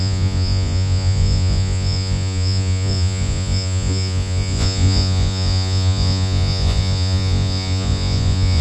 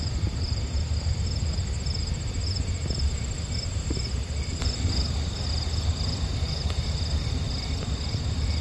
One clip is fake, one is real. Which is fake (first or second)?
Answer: first